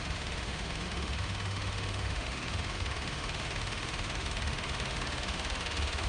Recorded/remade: remade